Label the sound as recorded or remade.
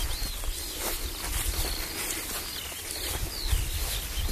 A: recorded